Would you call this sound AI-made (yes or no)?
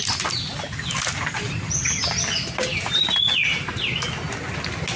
no